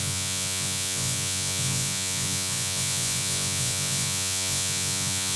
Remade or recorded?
remade